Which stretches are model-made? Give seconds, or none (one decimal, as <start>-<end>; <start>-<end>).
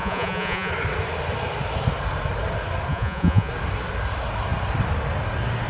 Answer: 0.0-0.7; 2.9-3.5